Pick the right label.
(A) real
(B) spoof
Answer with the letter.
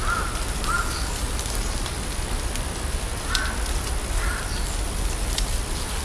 A